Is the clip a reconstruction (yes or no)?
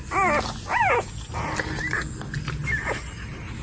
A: no